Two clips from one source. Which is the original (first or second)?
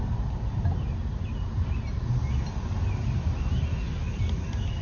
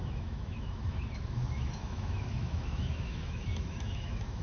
first